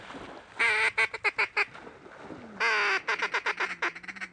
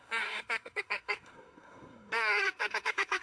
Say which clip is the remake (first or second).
second